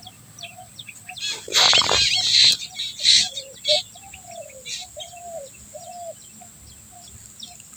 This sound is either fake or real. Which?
fake